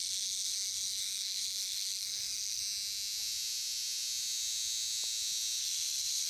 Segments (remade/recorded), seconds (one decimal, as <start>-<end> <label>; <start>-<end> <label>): 0.0-2.6 remade; 2.6-5.6 recorded; 5.6-6.3 remade